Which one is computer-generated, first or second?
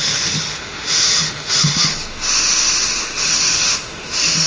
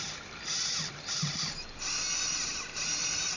first